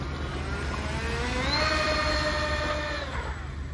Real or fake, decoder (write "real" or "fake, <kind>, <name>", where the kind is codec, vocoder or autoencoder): real